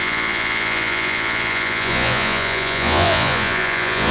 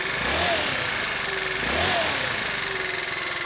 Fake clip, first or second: first